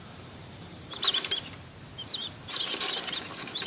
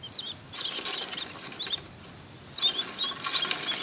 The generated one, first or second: first